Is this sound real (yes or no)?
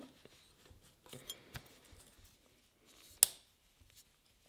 yes